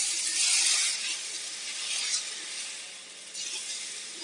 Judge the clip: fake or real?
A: real